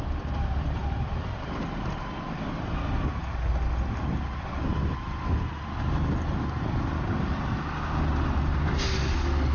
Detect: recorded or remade recorded